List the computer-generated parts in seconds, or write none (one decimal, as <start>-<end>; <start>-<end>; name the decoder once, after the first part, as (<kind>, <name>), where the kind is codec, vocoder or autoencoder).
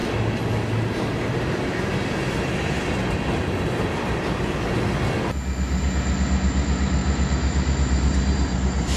7.0-9.0 (vocoder, BigVGAN v2)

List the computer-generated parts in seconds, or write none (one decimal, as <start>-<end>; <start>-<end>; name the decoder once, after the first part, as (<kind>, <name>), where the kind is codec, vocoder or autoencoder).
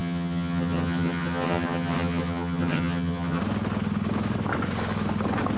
0.0-3.4 (vocoder, HiFi-GAN)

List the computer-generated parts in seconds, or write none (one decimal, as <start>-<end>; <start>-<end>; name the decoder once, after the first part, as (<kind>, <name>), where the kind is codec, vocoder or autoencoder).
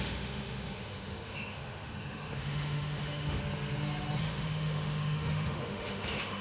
0.0-3.4 (autoencoder, DAC-VAE); 4.2-6.4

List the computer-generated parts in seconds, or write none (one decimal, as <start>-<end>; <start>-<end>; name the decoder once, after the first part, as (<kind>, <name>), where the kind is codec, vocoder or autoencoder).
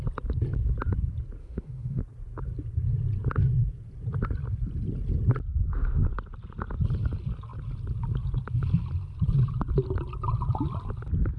1.4-2.0 (autoencoder, DAC-VAE)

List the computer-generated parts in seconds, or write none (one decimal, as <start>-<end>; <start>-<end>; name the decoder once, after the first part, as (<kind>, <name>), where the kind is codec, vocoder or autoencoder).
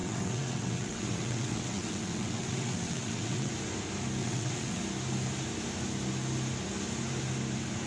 0.0-3.5 (vocoder, WaveNeXt); 4.2-4.8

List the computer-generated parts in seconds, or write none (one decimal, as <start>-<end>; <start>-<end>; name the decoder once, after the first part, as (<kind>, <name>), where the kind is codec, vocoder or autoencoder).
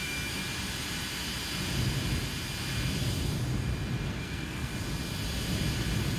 0.0-0.4 (codec, SNAC); 4.1-4.7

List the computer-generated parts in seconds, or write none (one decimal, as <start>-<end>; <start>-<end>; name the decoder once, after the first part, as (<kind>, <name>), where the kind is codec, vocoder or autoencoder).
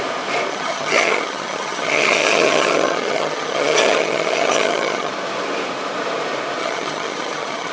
0.5-5.1 (vocoder, HiFi-GAN); 6.6-7.7